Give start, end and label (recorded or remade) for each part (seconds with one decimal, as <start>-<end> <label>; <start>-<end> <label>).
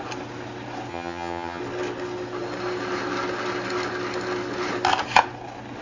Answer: 0.0-0.9 recorded; 0.9-1.6 remade; 1.6-5.8 recorded